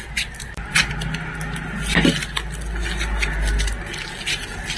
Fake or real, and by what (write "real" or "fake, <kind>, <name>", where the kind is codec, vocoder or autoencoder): real